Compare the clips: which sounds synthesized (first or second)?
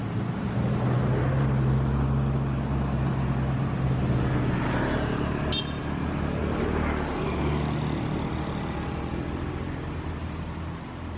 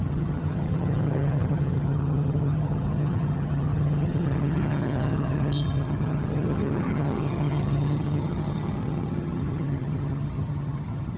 second